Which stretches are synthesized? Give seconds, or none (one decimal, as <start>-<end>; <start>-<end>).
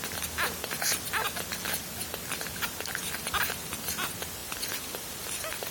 0.0-1.2; 2.6-5.7